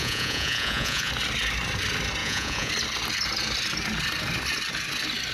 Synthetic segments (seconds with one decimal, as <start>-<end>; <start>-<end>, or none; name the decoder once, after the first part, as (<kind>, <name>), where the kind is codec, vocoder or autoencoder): 0.0-1.1 (vocoder, Vocos); 2.2-2.7